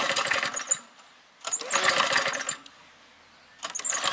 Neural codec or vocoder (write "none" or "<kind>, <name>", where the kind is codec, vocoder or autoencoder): none